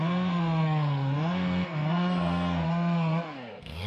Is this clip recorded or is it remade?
remade